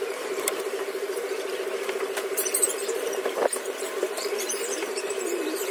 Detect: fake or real fake